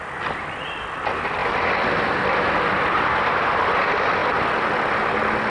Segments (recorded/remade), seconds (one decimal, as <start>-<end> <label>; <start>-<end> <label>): 0.0-5.5 recorded